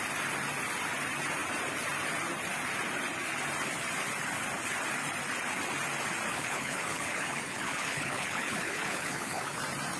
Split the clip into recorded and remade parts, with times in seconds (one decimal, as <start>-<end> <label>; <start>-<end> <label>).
0.0-6.3 recorded; 6.3-9.6 remade; 9.6-10.0 recorded